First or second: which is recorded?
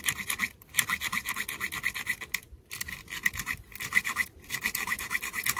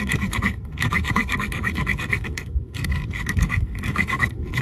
first